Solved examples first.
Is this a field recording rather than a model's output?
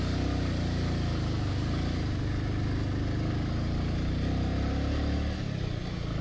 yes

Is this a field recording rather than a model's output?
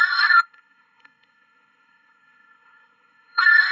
no